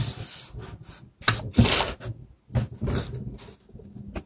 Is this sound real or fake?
real